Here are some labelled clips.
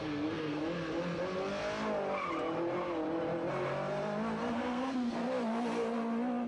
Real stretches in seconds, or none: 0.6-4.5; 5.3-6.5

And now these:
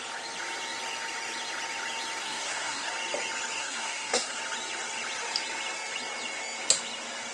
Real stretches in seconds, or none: 0.0-2.2; 2.9-3.6; 4.4-7.3

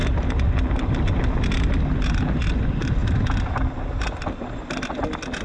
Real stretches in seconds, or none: 0.0-5.4

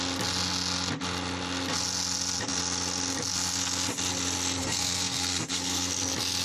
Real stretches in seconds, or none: 0.0-4.6; 5.9-6.4

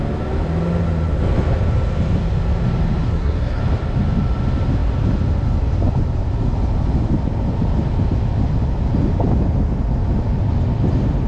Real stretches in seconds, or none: 0.0-3.0; 3.6-11.3

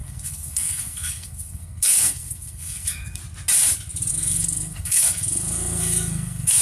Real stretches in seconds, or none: 3.2-4.1

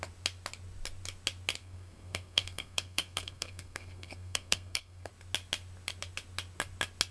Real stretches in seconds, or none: 0.0-1.6; 5.1-7.1